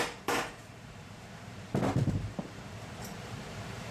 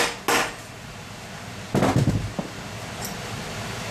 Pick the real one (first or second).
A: second